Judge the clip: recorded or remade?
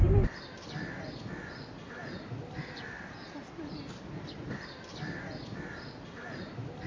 recorded